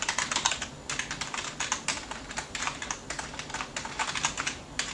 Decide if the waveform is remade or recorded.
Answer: recorded